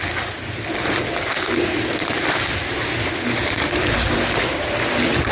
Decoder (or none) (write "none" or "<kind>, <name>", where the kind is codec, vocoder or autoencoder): none